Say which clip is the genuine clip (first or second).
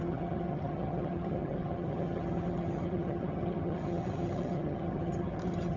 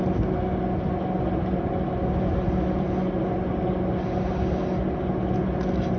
second